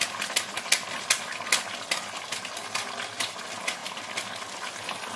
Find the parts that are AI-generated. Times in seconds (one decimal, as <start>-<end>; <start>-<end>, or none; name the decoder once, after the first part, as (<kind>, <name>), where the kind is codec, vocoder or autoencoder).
none